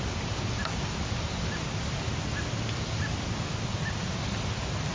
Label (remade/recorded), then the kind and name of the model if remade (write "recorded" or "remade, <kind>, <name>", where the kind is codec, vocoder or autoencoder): recorded